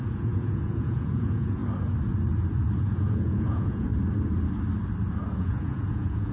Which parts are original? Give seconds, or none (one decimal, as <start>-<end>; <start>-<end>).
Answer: 1.6-2.8; 3.9-5.3